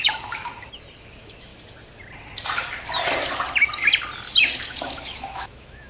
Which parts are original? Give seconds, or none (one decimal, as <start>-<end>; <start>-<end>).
0.5-1.0; 1.5-4.6